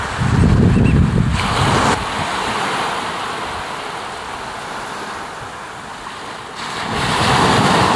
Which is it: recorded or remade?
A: recorded